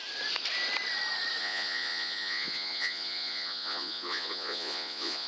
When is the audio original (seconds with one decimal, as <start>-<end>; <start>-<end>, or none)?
0.0-1.4